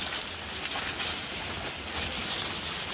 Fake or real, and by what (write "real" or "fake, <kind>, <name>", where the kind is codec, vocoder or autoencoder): real